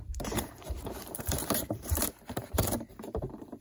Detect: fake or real fake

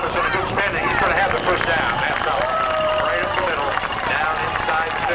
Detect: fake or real real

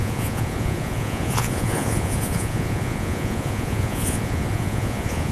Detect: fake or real fake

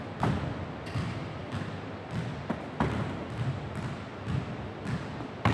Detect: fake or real real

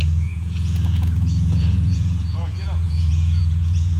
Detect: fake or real fake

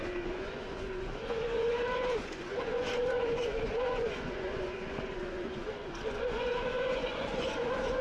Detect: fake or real fake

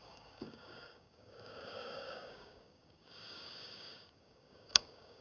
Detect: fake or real fake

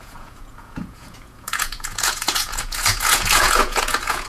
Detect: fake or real fake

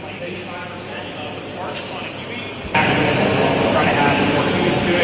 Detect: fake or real real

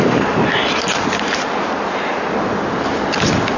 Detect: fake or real real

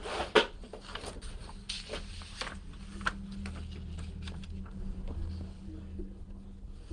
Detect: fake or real real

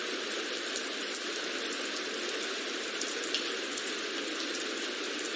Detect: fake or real real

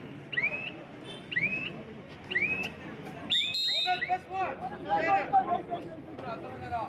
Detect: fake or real real